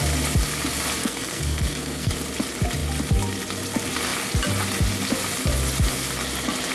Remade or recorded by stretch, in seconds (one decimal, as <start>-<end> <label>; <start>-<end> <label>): 0.0-1.0 recorded; 1.0-2.1 remade; 2.1-6.7 recorded